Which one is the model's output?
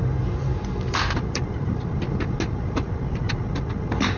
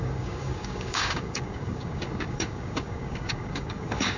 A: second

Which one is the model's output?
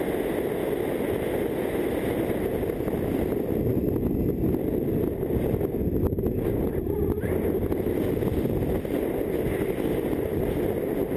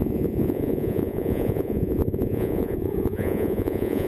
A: second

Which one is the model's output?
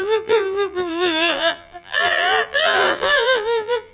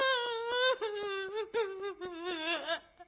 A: first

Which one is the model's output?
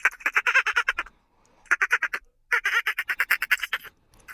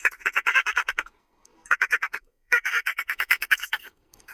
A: second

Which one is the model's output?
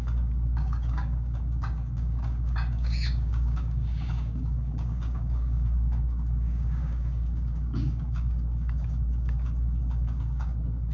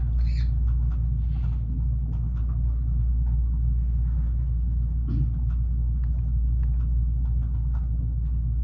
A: first